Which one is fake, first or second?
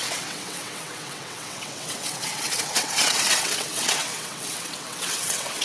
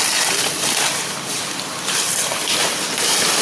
first